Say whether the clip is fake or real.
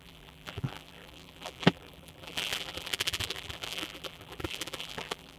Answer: fake